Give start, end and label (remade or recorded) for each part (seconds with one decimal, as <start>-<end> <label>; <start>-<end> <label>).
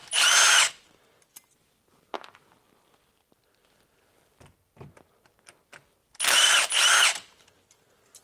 0.0-8.2 recorded